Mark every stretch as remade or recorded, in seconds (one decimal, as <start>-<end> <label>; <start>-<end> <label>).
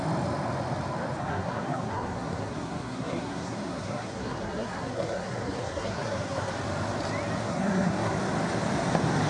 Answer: 0.0-1.2 recorded; 1.2-6.5 remade; 6.5-7.4 recorded; 7.4-8.1 remade; 8.1-9.3 recorded